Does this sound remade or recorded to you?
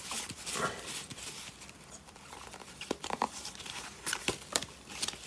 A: remade